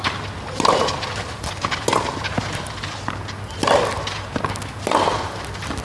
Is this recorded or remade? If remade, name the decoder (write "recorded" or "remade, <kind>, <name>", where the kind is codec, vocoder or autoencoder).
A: recorded